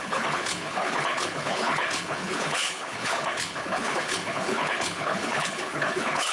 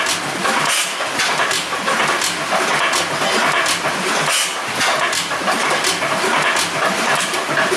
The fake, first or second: first